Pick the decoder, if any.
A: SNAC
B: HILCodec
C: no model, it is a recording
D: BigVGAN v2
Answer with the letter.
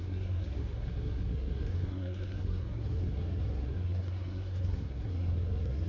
A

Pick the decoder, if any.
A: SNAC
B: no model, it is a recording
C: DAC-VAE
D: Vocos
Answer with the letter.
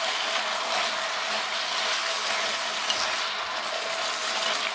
B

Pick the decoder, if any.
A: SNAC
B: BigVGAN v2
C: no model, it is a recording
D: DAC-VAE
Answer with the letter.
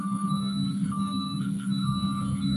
A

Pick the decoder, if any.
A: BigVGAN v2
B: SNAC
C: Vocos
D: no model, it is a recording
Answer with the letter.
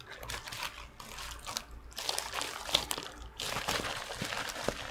D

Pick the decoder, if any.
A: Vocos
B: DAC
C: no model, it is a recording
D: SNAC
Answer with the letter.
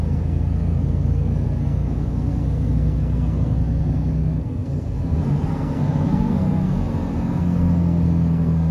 D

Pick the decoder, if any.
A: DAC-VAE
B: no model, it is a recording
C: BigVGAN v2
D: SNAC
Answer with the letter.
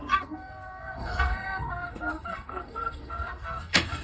D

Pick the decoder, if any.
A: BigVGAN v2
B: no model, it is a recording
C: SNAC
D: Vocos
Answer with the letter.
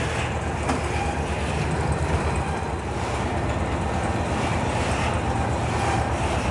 B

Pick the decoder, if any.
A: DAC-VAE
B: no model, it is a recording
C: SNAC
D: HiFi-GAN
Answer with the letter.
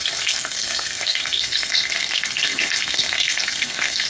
C